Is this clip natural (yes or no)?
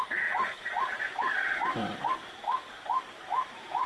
yes